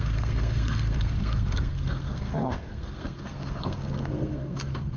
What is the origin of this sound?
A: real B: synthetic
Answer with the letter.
B